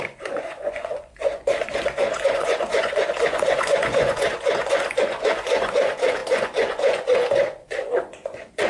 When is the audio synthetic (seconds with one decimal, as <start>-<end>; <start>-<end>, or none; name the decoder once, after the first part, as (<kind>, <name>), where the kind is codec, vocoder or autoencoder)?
0.0-8.7 (vocoder, Vocos)